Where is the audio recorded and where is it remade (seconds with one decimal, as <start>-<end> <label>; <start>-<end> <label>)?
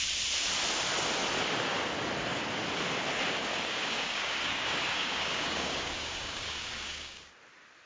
0.0-3.4 recorded; 3.4-7.3 remade; 7.3-7.9 recorded